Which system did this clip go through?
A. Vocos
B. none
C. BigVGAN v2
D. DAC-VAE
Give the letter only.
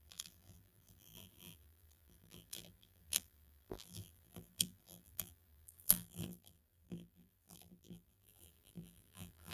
C